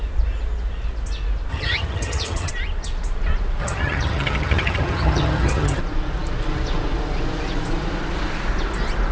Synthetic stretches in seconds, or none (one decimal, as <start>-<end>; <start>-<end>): 1.5-2.5; 3.6-5.8